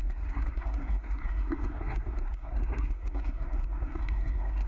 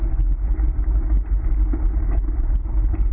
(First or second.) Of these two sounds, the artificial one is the first